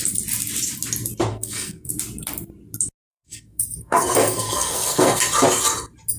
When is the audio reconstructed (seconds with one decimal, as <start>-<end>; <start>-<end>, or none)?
1.3-1.9; 3.1-5.2